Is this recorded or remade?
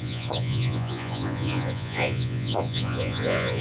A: remade